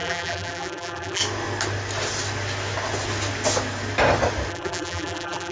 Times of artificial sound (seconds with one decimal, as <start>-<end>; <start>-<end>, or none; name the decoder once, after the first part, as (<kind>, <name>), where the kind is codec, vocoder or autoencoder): 0.0-1.2 (vocoder, BigVGAN v2); 4.5-5.5